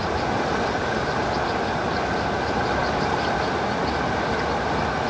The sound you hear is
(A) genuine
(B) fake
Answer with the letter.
A